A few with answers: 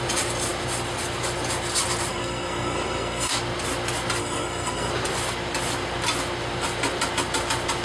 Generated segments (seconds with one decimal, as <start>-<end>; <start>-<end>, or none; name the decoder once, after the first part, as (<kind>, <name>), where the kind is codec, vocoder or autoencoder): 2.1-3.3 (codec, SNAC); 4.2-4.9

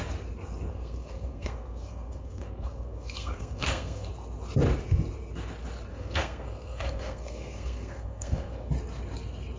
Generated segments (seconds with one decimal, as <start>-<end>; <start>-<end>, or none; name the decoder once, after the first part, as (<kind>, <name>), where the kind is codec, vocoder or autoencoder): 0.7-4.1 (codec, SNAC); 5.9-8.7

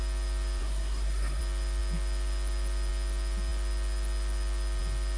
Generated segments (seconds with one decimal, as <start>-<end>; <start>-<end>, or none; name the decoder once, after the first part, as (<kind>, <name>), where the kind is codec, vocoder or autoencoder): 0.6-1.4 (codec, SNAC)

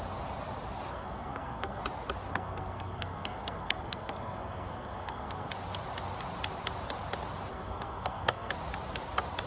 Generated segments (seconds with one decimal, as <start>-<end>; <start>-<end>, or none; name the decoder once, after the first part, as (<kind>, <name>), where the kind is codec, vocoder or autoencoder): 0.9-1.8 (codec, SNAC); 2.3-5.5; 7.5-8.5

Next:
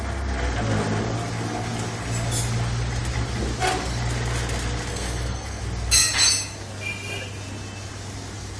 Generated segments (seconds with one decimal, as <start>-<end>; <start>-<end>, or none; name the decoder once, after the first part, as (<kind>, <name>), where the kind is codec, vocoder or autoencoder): 4.9-5.6 (codec, SNAC)